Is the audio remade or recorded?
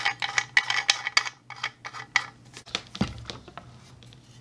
recorded